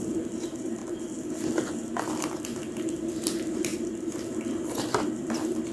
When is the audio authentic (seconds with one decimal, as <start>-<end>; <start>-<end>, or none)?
0.8-1.7; 2.5-3.1

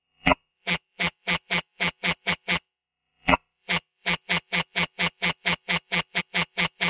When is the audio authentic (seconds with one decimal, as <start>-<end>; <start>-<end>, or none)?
none

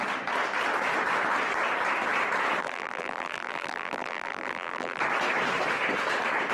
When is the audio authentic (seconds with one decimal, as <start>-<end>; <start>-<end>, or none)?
0.0-2.6; 5.0-6.5

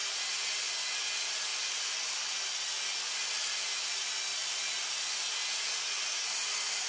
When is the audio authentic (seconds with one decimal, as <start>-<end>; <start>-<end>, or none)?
0.0-6.9

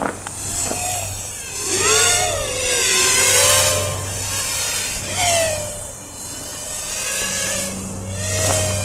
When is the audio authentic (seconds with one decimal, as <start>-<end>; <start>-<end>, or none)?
0.0-8.8